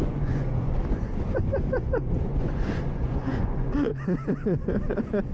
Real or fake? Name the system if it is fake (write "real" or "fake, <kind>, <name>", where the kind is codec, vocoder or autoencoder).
fake, vocoder, Vocos